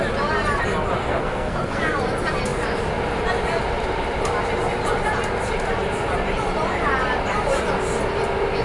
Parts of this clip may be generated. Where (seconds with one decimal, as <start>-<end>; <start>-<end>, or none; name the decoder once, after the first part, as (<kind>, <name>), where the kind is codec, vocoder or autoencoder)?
1.0-1.8 (codec, SNAC)